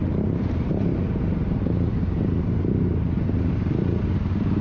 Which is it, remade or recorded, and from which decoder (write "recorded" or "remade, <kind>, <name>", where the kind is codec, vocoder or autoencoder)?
recorded